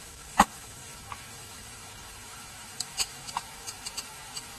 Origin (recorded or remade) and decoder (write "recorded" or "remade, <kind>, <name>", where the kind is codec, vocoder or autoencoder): remade, autoencoder, DAC-VAE